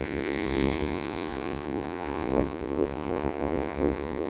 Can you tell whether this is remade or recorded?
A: remade